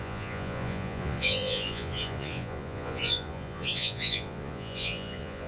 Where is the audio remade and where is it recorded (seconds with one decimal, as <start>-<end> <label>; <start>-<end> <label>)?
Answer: 0.0-5.5 remade